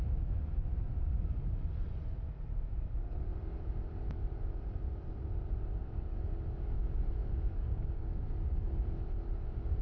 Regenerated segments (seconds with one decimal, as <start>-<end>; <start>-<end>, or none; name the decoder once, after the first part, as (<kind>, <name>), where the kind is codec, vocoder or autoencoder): 7.2-8.2 (codec, DAC)